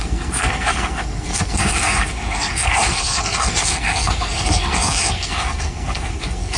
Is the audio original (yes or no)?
no